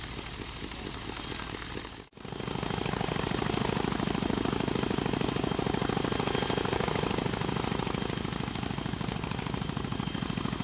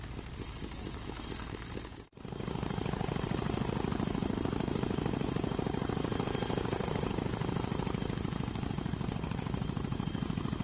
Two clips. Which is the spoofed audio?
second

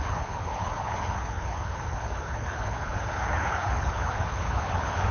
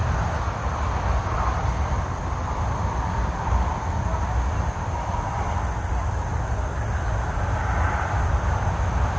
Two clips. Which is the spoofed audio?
first